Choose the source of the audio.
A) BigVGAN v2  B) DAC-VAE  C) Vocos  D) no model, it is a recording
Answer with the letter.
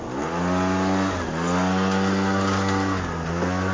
D